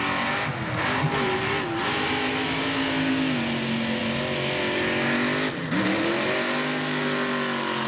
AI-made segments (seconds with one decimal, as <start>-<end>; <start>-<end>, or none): none